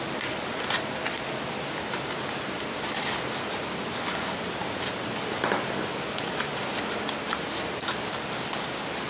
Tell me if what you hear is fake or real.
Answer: real